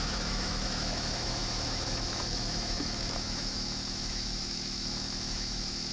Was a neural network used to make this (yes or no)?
yes